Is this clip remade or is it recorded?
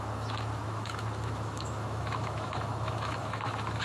remade